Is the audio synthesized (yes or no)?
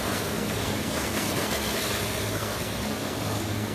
yes